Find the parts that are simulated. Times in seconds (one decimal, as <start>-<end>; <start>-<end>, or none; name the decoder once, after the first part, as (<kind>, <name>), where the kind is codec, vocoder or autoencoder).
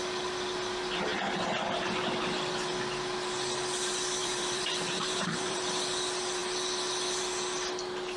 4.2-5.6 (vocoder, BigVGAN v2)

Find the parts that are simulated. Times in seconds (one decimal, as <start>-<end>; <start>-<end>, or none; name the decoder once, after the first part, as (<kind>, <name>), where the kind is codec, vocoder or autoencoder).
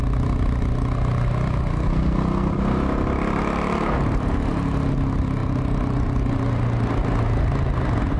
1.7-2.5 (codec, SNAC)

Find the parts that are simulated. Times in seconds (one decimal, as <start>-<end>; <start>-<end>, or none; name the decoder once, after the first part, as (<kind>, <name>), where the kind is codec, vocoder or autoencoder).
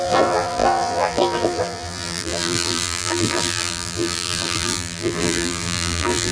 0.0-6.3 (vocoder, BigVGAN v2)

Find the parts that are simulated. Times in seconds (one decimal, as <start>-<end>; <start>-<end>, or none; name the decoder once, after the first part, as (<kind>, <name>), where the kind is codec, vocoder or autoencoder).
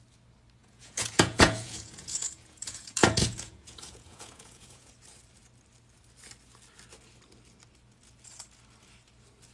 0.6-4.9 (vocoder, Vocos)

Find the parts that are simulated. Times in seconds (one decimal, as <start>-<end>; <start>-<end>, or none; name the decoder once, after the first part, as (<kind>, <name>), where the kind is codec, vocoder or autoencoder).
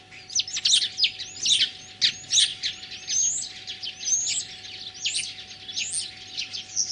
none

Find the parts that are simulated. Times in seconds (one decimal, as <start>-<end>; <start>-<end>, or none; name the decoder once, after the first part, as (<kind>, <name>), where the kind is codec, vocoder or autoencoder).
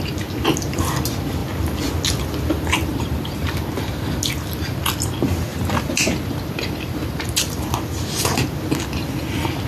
2.9-3.6 (vocoder, BigVGAN v2); 5.5-7.2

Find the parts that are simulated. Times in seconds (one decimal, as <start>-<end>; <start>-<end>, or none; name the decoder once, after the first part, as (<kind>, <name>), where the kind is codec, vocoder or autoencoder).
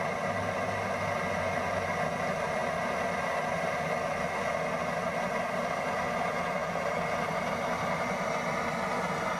6.6-8.5 (vocoder, BigVGAN v2)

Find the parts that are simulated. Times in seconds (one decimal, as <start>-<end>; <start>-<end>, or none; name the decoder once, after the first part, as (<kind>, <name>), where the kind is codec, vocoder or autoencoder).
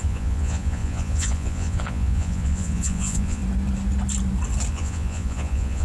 0.0-3.4 (vocoder, Vocos); 4.7-5.8